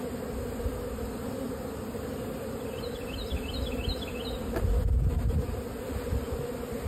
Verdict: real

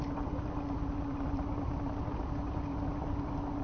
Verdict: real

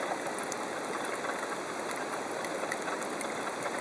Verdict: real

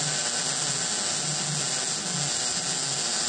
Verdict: real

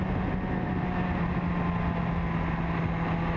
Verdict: real